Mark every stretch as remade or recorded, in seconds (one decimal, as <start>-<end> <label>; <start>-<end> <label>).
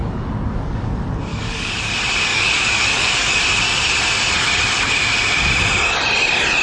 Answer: 0.0-0.9 remade; 0.9-1.3 recorded; 1.3-1.9 remade; 1.9-2.3 recorded; 2.3-3.4 remade; 3.4-6.6 recorded